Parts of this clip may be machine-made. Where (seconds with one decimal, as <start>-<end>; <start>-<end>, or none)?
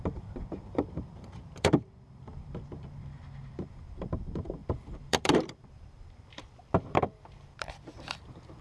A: 0.0-8.6